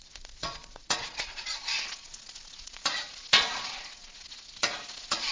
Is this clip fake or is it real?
fake